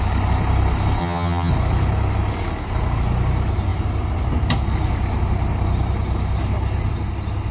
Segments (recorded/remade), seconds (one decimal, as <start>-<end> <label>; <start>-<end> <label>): 0.0-1.0 recorded; 1.0-1.5 remade; 1.5-7.5 recorded